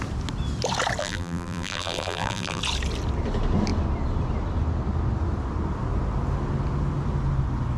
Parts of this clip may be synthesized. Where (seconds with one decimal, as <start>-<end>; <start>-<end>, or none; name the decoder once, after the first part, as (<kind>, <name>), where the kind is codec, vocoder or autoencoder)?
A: 1.0-2.6 (vocoder, BigVGAN v2)